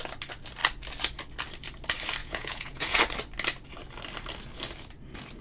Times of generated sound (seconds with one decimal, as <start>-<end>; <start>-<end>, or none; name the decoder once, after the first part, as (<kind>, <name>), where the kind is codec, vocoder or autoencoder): 2.2-3.0 (vocoder, Vocos)